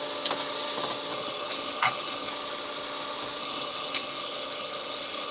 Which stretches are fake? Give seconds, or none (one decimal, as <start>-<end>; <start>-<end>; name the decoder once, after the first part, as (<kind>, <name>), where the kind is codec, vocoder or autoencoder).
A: 1.1-2.3 (codec, HILCodec); 3.4-5.3